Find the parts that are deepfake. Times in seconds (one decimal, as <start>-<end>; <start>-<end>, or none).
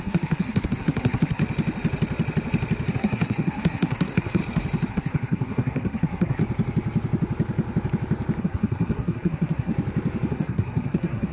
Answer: 0.0-1.4; 2.9-4.4; 4.9-6.4; 8.4-9.7; 10.3-11.3